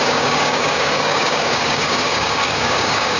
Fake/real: fake